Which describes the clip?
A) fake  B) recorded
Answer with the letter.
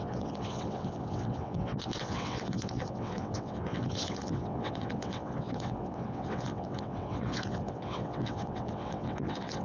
A